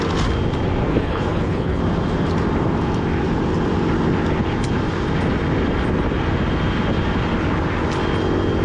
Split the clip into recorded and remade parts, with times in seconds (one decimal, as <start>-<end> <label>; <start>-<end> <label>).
0.0-0.9 recorded; 0.9-1.8 remade; 1.8-8.6 recorded